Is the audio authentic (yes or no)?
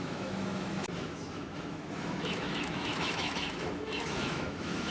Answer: no